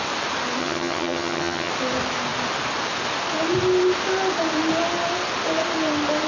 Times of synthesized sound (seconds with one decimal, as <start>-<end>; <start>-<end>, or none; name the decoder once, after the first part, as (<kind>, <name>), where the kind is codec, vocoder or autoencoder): 0.6-1.7 (vocoder, HiFi-GAN)